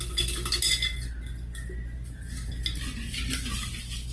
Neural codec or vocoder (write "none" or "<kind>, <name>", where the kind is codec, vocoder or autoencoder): none